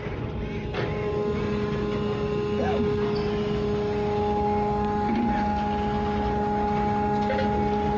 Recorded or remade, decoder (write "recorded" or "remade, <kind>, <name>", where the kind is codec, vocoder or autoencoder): recorded